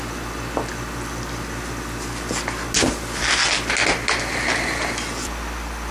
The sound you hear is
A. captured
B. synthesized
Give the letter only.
A